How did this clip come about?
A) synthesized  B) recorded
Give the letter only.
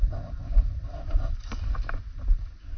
B